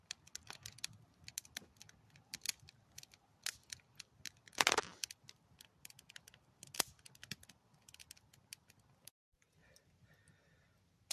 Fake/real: real